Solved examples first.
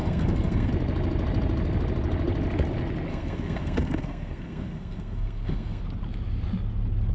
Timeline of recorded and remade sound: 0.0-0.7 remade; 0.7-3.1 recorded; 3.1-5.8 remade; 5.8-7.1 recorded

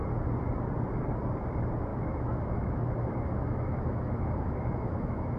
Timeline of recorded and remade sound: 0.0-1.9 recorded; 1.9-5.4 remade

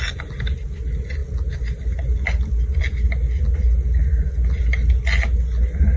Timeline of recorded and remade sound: 0.0-6.0 recorded

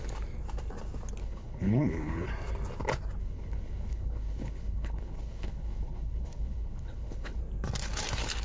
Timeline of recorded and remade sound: 0.0-1.2 recorded; 1.2-2.3 remade; 2.3-3.2 recorded; 3.2-7.4 remade; 7.4-8.4 recorded

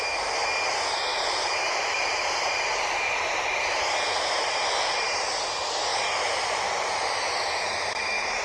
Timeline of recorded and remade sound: 0.0-1.1 recorded; 1.1-3.6 remade; 3.6-5.9 recorded; 5.9-8.4 remade

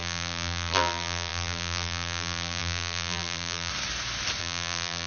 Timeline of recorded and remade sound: 0.0-3.7 remade; 3.7-4.4 recorded; 4.4-5.1 remade

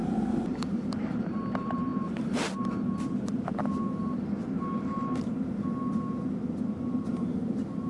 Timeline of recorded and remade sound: 0.0-4.4 remade; 4.4-6.6 recorded; 6.6-7.9 remade

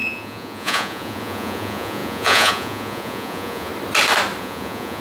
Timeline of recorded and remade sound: 0.0-3.7 remade; 3.7-4.4 recorded; 4.4-5.0 remade